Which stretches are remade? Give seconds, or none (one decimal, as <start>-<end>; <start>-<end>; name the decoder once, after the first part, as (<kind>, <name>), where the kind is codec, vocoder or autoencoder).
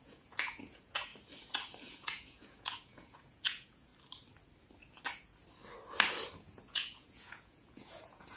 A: 0.0-1.1 (vocoder, Vocos); 1.8-3.9; 6.4-8.4